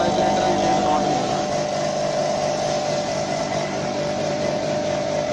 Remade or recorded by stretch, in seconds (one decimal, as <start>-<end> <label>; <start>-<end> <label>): 0.0-0.7 recorded; 0.7-1.5 remade; 1.5-2.2 recorded; 2.2-5.3 remade